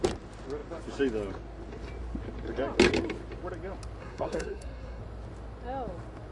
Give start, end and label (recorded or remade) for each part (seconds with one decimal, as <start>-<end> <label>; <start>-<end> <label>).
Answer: 0.0-4.0 recorded; 4.0-5.0 remade; 5.0-6.3 recorded